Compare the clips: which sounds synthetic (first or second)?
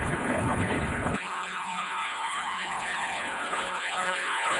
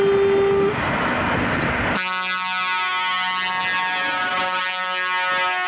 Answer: first